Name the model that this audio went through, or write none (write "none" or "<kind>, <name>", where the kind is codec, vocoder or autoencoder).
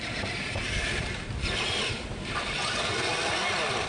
none